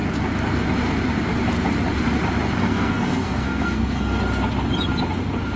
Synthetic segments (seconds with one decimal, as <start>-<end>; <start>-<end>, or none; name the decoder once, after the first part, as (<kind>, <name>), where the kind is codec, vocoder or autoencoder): 2.6-4.2 (codec, SNAC)